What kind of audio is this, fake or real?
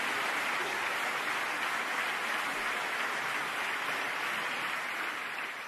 real